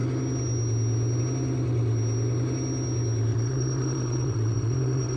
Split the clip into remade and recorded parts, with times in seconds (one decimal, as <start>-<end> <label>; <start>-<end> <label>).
0.0-3.3 recorded; 3.3-5.2 remade